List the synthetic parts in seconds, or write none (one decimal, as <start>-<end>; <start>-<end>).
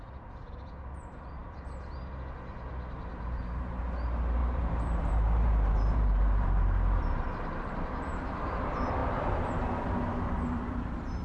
3.1-3.8; 4.4-8.6